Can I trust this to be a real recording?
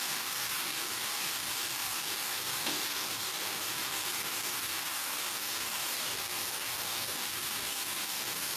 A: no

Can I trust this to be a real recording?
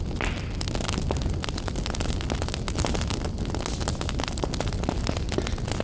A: yes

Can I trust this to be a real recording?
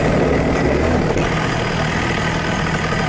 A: yes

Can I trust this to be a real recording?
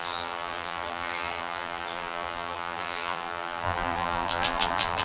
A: no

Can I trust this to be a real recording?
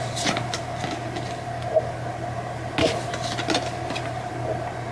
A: yes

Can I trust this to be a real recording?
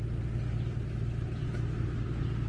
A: yes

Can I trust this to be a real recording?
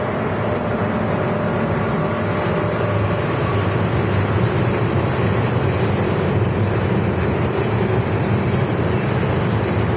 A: yes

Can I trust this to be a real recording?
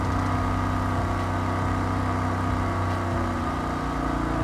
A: yes